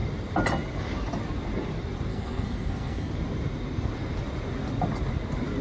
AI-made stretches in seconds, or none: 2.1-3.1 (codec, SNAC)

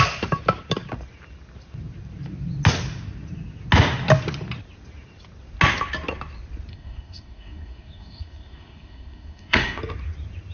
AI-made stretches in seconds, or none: 6.7-9.8 (codec, SNAC)

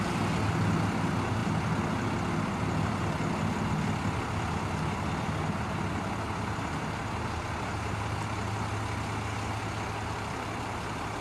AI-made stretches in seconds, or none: none

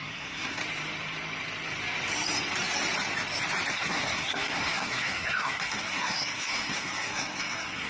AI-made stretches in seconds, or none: 0.0-0.6 (codec, SNAC); 3.7-7.9

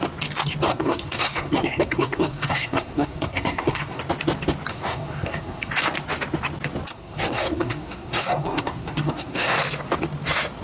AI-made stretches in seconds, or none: 0.7-4.0 (codec, SNAC); 4.7-5.7; 6.9-9.6

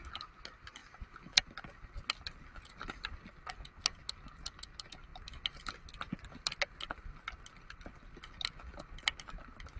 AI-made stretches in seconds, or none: none

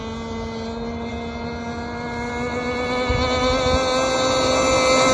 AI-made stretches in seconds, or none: none